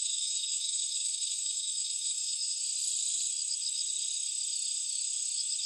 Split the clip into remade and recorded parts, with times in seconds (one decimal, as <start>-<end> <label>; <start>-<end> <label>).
0.0-2.6 remade; 2.6-5.7 recorded